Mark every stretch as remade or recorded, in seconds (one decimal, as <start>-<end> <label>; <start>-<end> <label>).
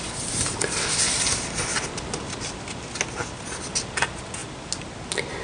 0.0-5.4 recorded